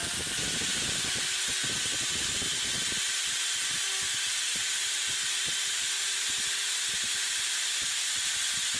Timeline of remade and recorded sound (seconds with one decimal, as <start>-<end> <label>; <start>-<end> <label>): 0.0-8.8 recorded